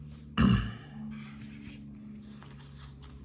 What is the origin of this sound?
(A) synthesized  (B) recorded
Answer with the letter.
B